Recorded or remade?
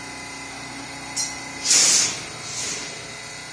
recorded